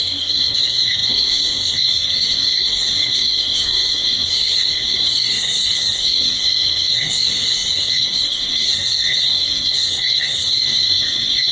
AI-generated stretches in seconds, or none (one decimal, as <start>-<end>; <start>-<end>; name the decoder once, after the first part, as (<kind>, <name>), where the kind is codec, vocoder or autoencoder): 0.0-11.5 (codec, SNAC)